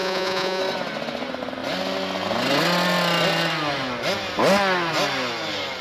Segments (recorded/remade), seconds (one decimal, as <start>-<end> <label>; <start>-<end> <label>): 0.0-0.6 remade; 0.6-5.8 recorded